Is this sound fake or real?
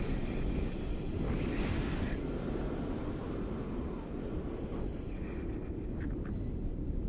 real